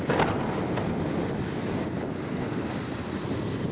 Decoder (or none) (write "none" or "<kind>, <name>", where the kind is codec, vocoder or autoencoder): none